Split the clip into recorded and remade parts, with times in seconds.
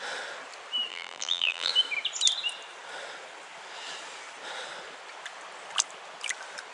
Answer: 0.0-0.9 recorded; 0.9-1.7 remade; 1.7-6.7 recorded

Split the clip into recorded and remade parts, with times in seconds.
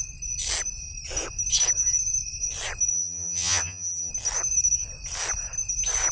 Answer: 0.0-2.9 recorded; 2.9-4.1 remade; 4.1-6.1 recorded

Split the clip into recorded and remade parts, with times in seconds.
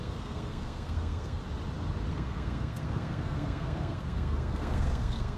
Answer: 0.0-1.4 remade; 1.4-2.1 recorded; 2.1-5.4 remade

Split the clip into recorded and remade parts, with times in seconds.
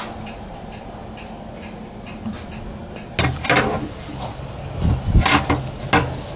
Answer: 0.0-6.4 recorded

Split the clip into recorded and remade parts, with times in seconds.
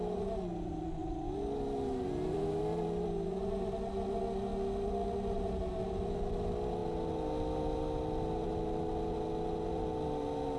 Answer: 0.0-10.6 recorded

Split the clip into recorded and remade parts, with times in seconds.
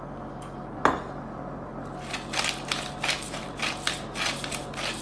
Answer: 0.0-5.0 recorded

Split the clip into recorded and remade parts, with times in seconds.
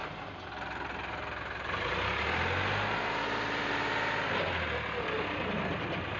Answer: 0.0-6.2 recorded